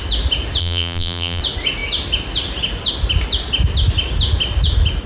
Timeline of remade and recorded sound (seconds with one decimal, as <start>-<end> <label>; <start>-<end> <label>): 0.0-0.6 recorded; 0.6-1.4 remade; 1.4-5.1 recorded